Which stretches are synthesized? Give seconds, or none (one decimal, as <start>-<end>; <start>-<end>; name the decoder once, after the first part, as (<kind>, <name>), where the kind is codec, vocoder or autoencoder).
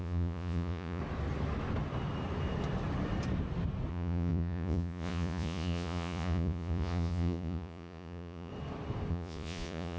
0.0-1.0 (vocoder, Vocos); 3.9-8.5; 9.1-10.0